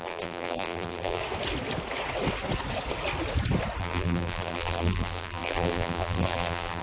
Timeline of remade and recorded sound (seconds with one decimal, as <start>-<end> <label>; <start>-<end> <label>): 0.0-1.2 remade; 1.2-3.8 recorded; 3.8-6.8 remade